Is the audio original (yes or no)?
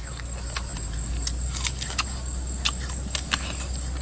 yes